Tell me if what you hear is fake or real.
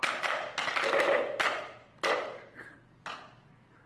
real